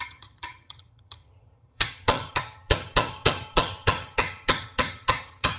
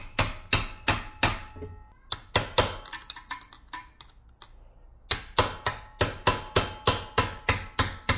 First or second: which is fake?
first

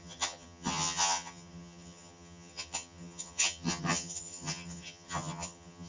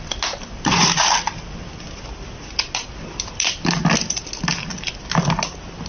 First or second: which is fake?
first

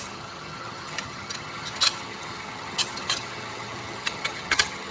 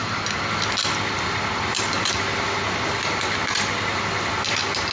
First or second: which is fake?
first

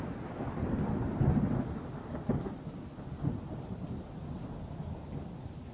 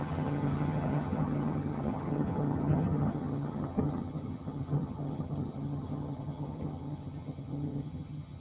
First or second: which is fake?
second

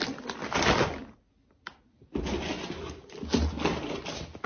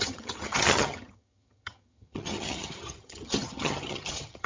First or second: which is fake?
second